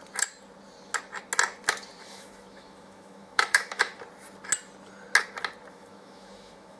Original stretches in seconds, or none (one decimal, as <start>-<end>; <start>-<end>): 0.0-2.0; 3.9-5.7